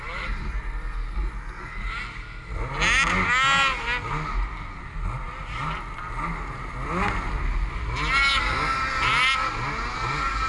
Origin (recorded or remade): recorded